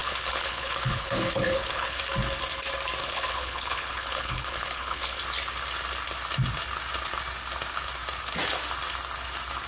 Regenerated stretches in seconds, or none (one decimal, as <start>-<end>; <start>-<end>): 0.0-2.0; 3.0-5.2